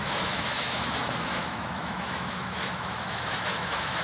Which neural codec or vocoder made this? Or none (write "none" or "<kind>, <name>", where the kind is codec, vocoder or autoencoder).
autoencoder, DAC-VAE